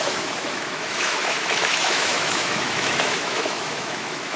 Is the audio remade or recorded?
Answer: remade